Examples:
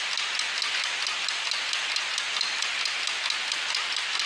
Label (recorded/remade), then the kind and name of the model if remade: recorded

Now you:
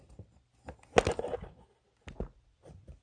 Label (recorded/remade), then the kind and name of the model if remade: recorded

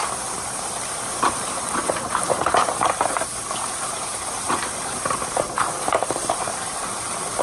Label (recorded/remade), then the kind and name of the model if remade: remade, vocoder, BigVGAN v2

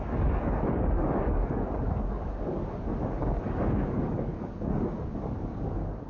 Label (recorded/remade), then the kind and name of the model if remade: remade, codec, DAC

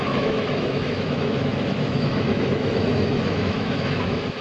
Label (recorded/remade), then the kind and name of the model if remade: remade, autoencoder, DAC-VAE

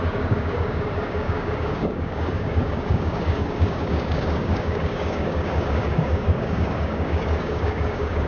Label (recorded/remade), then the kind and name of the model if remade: remade, codec, DAC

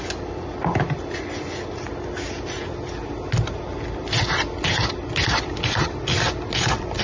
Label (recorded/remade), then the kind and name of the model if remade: recorded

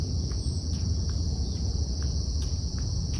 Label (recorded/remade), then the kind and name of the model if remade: remade, vocoder, Vocos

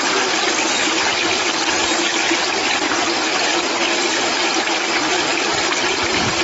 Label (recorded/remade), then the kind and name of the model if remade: recorded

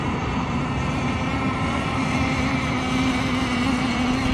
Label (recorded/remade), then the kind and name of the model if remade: remade, vocoder, BigVGAN v2